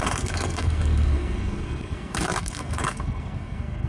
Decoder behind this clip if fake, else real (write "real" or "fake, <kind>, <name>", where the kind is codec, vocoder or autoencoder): fake, codec, SNAC